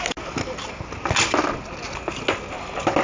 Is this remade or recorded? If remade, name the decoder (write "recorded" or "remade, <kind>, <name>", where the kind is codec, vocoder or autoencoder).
recorded